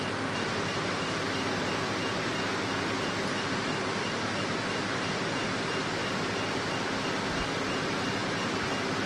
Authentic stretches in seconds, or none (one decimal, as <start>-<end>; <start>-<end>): 0.0-2.5; 3.5-8.2; 8.7-9.1